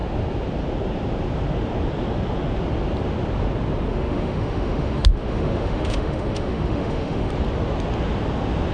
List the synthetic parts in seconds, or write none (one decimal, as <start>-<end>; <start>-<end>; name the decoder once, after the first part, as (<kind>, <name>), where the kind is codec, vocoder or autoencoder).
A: 3.9-7.3 (autoencoder, DAC-VAE)